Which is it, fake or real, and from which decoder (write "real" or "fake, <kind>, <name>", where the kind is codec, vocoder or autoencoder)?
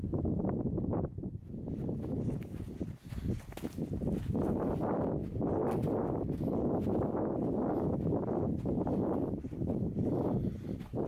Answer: real